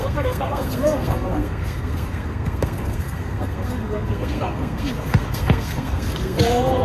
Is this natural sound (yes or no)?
no